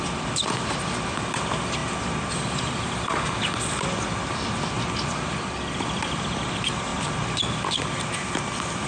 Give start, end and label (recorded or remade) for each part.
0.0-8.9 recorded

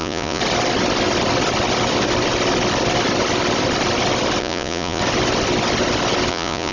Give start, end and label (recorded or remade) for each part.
0.0-0.4 remade; 0.4-4.4 recorded; 4.4-5.0 remade; 5.0-6.3 recorded; 6.3-6.7 remade

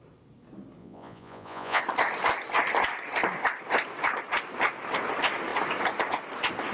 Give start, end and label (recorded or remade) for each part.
0.0-0.8 recorded; 0.8-1.8 remade; 1.8-6.7 recorded

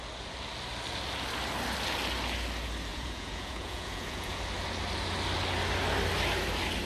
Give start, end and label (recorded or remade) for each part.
0.0-2.9 recorded; 2.9-4.4 remade; 4.4-6.9 recorded

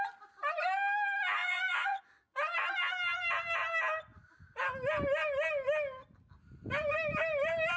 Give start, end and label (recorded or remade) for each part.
0.0-1.4 recorded; 1.4-2.0 remade; 2.0-7.8 recorded